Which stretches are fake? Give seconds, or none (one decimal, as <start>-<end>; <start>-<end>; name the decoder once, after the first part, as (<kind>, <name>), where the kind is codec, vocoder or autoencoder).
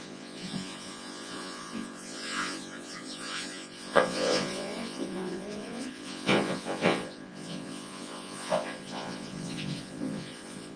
0.0-10.8 (vocoder, Vocos)